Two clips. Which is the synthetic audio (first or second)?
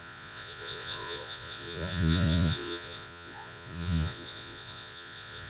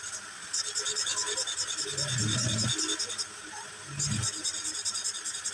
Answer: first